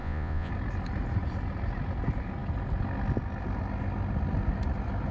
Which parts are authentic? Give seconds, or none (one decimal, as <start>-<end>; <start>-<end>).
0.5-5.1